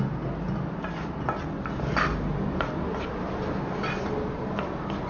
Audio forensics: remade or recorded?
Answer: recorded